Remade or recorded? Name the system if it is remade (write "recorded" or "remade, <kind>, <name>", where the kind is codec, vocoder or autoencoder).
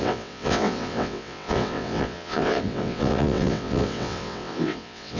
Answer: remade, vocoder, WaveNeXt